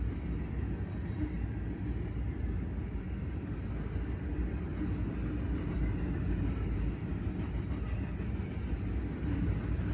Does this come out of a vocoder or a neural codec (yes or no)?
no